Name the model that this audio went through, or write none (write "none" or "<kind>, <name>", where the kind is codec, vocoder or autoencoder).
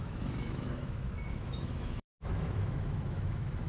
autoencoder, DAC-VAE